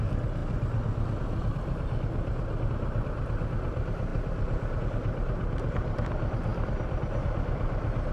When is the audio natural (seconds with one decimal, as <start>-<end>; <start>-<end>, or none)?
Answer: 0.0-8.1